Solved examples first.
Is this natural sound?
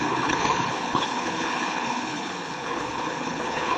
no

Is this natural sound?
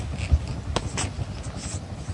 yes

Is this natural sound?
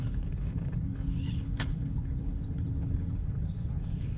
no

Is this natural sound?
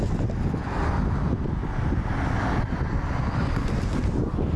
yes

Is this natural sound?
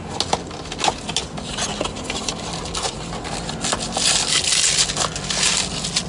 yes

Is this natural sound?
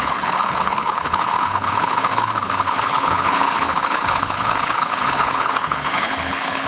no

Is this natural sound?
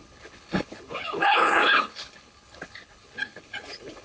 no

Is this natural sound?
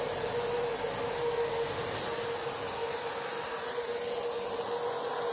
yes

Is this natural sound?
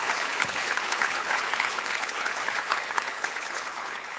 no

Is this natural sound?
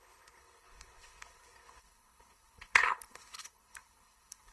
no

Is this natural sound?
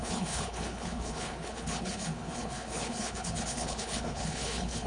no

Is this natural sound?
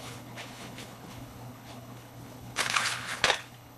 no